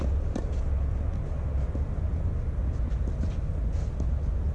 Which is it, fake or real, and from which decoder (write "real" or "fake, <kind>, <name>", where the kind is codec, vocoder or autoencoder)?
real